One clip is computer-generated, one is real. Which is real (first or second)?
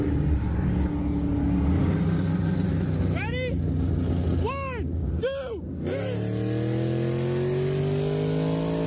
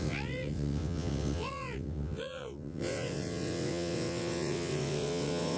first